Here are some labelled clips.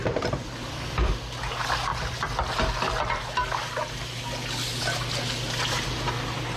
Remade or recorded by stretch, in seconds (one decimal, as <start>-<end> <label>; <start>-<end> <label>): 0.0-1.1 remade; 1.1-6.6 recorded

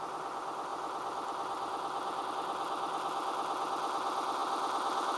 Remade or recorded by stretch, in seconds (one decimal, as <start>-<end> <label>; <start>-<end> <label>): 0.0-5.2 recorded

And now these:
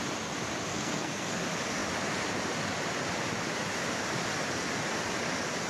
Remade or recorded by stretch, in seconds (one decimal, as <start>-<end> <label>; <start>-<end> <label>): 0.0-0.7 recorded; 0.7-1.4 remade; 1.4-5.7 recorded

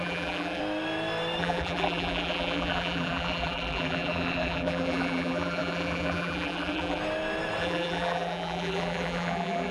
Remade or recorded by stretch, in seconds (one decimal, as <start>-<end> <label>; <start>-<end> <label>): 0.0-0.6 remade; 0.6-1.4 recorded; 1.4-7.0 remade; 7.0-7.6 recorded; 7.6-9.7 remade

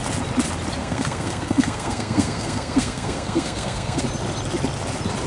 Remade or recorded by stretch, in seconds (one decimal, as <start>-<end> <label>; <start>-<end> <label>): 0.0-0.8 recorded; 0.8-4.0 remade; 4.0-5.3 recorded

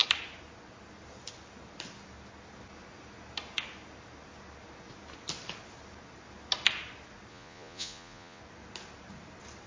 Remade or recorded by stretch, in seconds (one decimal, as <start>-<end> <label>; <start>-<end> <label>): 0.0-7.3 recorded; 7.3-8.4 remade; 8.4-9.7 recorded

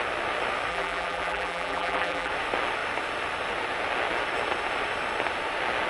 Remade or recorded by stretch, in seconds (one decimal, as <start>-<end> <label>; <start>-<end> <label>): 0.0-0.7 recorded; 0.7-2.3 remade; 2.3-5.9 recorded

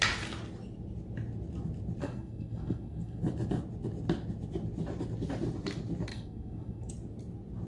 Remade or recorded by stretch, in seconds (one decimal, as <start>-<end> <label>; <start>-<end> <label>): 0.0-2.0 recorded; 2.0-3.2 remade; 3.2-6.1 recorded; 6.1-6.9 remade; 6.9-7.7 recorded